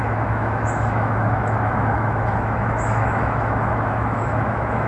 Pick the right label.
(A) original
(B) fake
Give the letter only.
B